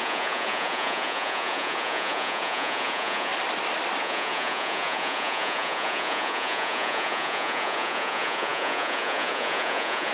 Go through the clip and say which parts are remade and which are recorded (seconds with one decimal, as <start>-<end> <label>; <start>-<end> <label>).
0.0-3.3 remade; 3.3-4.0 recorded; 4.0-10.1 remade